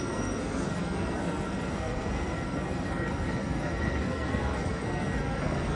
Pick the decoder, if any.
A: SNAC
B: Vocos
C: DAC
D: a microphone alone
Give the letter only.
A